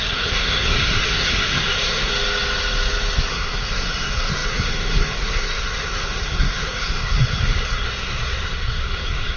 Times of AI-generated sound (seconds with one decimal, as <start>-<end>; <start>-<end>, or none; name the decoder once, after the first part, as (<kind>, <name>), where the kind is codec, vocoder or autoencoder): 0.0-2.1 (codec, SNAC); 3.3-9.4